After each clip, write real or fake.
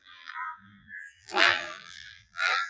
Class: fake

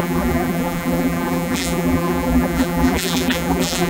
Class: fake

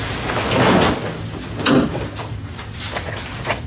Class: real